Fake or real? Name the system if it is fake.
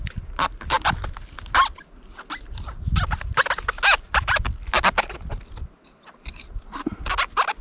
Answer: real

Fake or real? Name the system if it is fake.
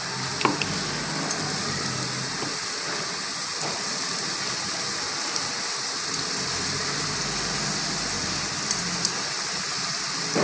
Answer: real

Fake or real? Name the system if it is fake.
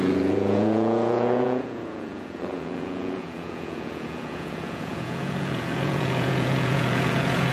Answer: fake, vocoder, Vocos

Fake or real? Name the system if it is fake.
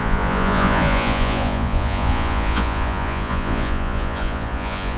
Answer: fake, vocoder, Vocos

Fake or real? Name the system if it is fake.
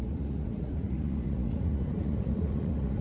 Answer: fake, vocoder, Vocos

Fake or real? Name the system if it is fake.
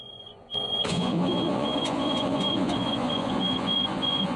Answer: fake, vocoder, Vocos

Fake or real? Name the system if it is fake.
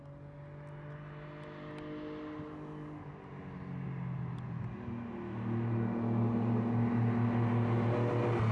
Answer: real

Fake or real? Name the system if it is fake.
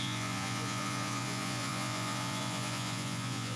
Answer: fake, vocoder, Vocos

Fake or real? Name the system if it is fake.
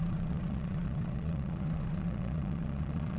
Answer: fake, vocoder, Vocos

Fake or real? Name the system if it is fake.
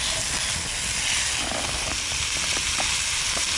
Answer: real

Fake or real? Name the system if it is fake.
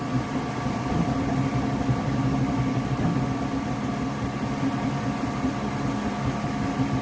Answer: real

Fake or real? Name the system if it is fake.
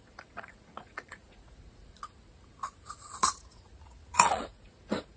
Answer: fake, vocoder, Vocos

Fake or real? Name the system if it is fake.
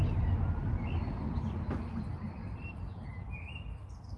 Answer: real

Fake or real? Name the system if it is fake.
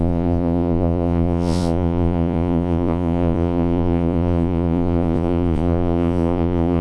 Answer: fake, vocoder, Vocos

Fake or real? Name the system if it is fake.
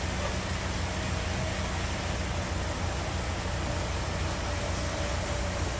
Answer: real